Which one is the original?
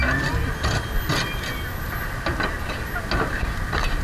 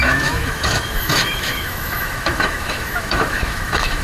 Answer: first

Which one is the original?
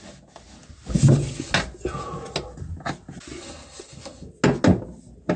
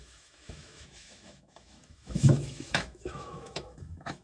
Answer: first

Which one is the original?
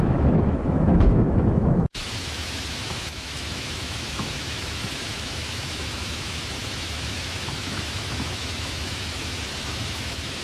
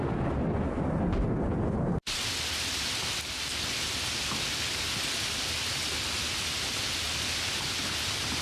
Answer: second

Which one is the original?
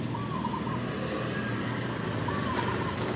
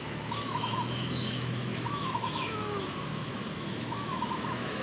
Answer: first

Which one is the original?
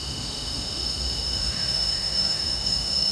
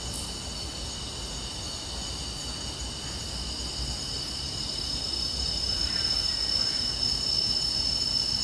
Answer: second